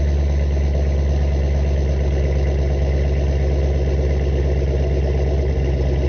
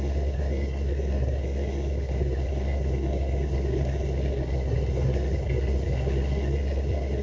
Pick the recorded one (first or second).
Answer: first